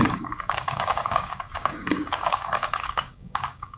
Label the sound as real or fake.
fake